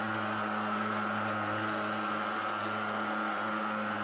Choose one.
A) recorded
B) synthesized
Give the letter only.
A